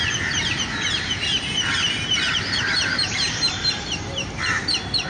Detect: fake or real fake